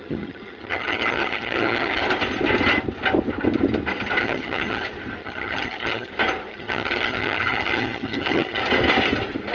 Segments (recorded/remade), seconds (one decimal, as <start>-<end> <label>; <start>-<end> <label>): 0.0-2.0 remade; 2.0-4.2 recorded; 4.2-4.8 remade; 4.8-5.2 recorded; 5.2-6.1 remade; 6.1-6.5 recorded; 6.5-8.6 remade; 8.6-9.5 recorded